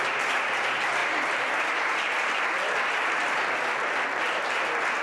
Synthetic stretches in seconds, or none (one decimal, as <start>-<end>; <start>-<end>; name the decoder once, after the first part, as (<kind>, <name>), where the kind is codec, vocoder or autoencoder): 1.0-2.4 (vocoder, BigVGAN v2); 3.2-4.4